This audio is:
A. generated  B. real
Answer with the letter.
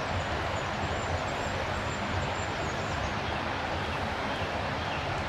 B